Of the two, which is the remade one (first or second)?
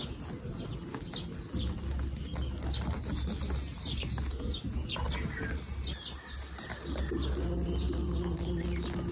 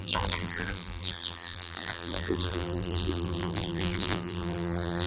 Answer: second